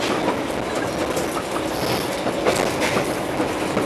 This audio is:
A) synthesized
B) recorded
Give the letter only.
B